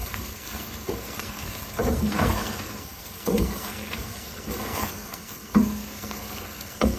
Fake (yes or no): yes